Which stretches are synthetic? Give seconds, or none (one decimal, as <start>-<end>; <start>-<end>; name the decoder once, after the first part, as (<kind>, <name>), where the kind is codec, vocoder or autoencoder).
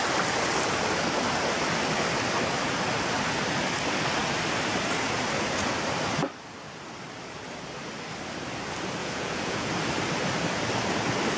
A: 9.0-9.7 (vocoder, Vocos)